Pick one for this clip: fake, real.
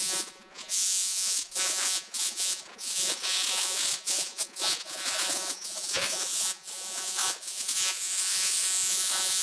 fake